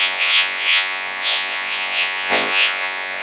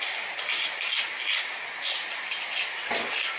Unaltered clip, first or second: second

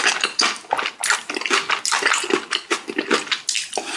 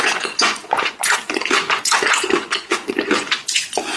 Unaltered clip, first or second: first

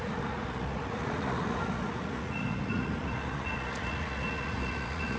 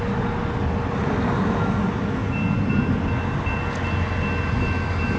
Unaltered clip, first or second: second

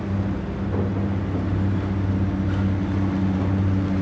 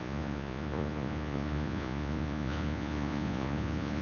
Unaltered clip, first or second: first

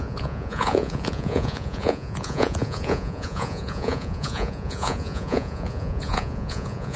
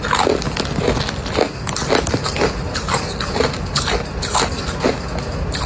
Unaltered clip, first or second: second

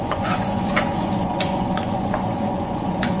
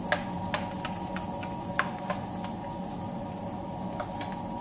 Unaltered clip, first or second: second